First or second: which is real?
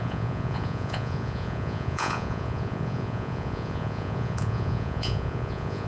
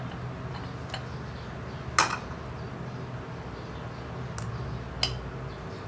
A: second